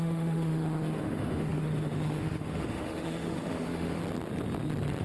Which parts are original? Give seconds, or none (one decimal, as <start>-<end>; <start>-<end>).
4.0-5.0